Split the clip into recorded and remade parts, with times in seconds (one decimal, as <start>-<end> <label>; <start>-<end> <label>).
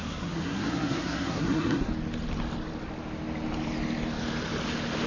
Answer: 0.0-1.9 remade; 1.9-5.1 recorded